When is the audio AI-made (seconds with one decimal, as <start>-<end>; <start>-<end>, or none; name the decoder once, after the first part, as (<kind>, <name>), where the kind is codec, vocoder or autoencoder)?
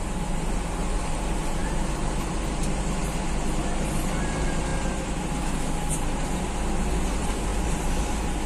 none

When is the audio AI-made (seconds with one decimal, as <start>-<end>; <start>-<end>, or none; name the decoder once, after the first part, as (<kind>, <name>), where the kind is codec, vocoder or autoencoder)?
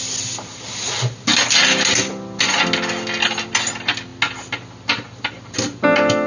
none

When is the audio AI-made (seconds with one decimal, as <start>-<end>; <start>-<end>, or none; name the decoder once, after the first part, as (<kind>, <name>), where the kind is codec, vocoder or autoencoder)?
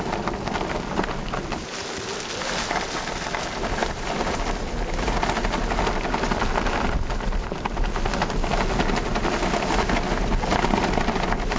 none